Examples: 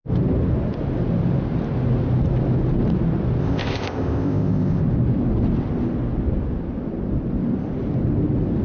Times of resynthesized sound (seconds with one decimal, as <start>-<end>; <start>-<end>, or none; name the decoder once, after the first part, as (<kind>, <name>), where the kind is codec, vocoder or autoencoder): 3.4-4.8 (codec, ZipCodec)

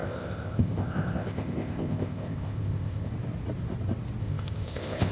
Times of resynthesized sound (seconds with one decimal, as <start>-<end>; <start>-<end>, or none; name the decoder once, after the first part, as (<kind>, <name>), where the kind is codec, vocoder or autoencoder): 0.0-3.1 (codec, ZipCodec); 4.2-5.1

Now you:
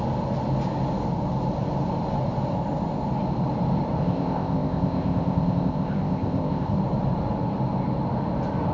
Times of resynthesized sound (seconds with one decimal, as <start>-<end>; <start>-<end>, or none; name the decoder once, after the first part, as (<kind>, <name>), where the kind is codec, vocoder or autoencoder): 4.0-6.8 (codec, ZipCodec)

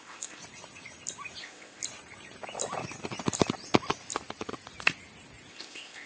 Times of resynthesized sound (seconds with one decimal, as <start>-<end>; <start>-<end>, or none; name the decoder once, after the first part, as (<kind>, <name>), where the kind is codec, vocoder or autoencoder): 0.0-0.4 (codec, ZipCodec); 1.4-1.8; 5.5-6.1